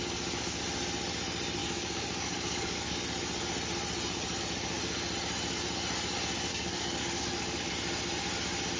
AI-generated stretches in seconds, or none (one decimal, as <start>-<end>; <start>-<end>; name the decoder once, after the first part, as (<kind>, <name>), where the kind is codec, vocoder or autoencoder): 1.6-3.0 (codec, DAC); 6.5-7.7